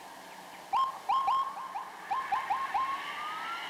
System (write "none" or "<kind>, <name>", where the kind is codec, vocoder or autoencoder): none